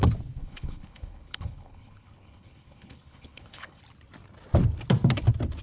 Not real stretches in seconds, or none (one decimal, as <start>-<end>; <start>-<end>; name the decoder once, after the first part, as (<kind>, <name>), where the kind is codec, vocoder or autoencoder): 0.4-3.8 (codec, HILCodec)